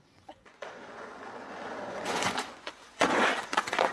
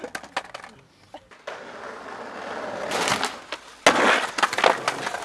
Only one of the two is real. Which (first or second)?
second